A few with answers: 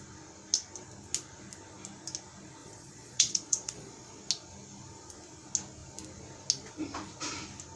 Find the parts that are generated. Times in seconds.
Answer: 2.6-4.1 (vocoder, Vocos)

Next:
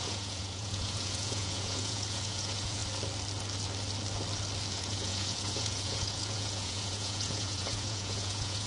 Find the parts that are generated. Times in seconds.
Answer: 0.0-2.8 (vocoder, Vocos); 4.7-8.7

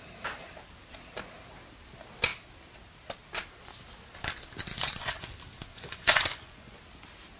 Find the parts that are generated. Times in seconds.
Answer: 4.7-5.3 (vocoder, Vocos); 5.7-6.8

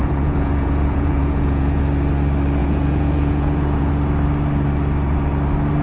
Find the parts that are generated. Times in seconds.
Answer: 0.0-1.8 (vocoder, Vocos); 2.6-3.9